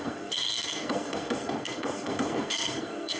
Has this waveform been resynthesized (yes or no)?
yes